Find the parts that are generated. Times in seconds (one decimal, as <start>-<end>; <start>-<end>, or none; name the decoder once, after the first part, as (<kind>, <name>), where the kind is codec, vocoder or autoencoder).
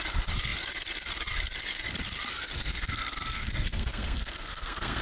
2.6-5.0 (codec, SNAC)